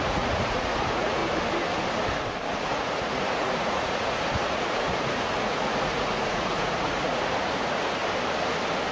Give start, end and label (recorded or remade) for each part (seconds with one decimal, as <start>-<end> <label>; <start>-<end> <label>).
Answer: 0.0-1.2 remade; 1.2-2.5 recorded; 2.5-8.0 remade; 8.0-8.9 recorded